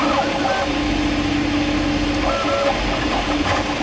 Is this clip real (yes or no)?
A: yes